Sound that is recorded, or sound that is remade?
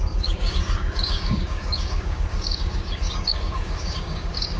remade